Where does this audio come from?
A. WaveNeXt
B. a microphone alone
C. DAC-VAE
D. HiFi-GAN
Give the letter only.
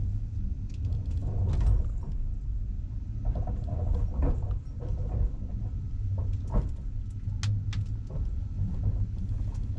B